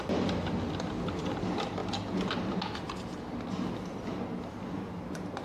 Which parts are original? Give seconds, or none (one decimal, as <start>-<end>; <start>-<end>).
0.0-5.4